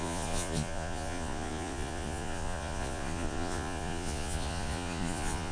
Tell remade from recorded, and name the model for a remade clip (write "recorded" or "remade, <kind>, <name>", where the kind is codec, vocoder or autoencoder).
remade, vocoder, Vocos